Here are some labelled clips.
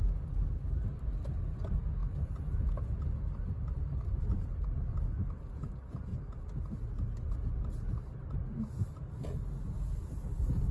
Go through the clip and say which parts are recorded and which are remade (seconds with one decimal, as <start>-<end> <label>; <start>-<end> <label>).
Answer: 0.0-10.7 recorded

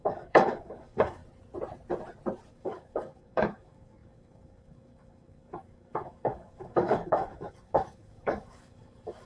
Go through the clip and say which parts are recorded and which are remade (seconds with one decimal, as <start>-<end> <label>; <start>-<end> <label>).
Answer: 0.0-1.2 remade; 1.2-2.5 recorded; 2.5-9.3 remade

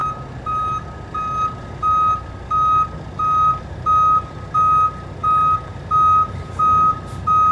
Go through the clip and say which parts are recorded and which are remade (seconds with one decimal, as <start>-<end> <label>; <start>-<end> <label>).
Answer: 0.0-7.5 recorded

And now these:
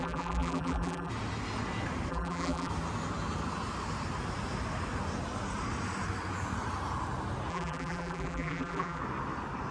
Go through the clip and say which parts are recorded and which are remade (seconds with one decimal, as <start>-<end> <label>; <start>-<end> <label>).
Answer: 0.0-1.1 remade; 1.1-2.1 recorded; 2.1-2.7 remade; 2.7-7.5 recorded; 7.5-9.0 remade; 9.0-9.7 recorded